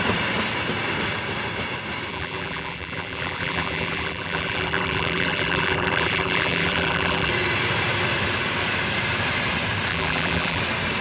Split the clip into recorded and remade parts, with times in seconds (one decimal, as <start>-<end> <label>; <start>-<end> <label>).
0.0-2.1 recorded; 2.1-7.3 remade; 7.3-9.9 recorded; 9.9-10.6 remade; 10.6-11.0 recorded